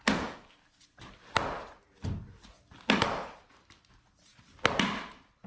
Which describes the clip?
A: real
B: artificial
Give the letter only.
A